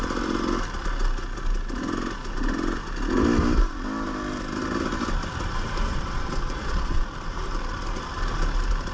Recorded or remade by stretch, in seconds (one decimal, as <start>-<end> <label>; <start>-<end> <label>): 0.0-5.9 recorded; 5.9-7.0 remade; 7.0-8.9 recorded